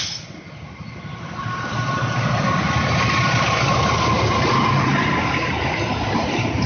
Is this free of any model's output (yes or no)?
yes